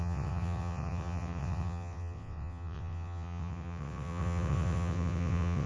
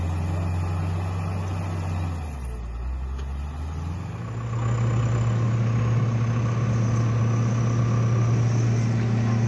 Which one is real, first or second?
second